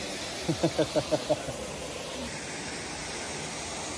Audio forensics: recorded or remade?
recorded